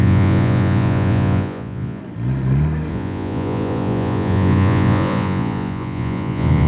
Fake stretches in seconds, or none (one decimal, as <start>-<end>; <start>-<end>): 0.0-2.0; 2.9-6.7